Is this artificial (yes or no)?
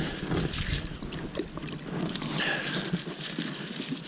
no